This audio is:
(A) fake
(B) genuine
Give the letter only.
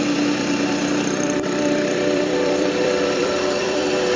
A